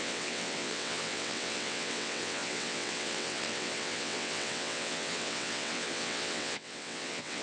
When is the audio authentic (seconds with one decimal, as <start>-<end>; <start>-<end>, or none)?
none